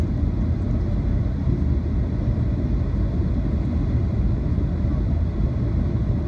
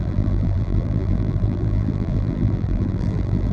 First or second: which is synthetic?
second